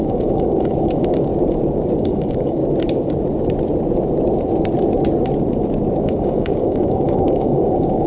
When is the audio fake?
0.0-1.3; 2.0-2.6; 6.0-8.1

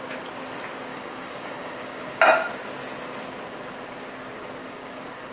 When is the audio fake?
0.9-2.2; 4.6-5.3

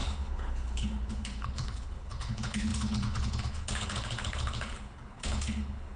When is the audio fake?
0.0-6.0